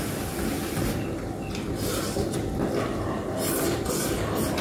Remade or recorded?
recorded